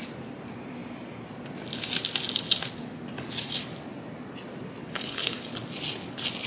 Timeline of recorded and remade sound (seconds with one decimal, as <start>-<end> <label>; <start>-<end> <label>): 0.0-4.8 recorded; 4.8-5.5 remade; 5.5-6.5 recorded